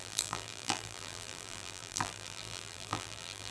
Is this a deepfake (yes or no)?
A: yes